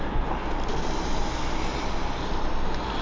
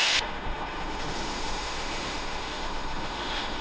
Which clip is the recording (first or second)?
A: first